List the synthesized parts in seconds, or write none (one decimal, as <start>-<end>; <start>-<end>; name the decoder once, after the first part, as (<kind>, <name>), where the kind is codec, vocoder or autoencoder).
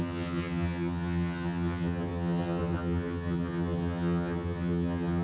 0.0-5.2 (vocoder, HiFi-GAN)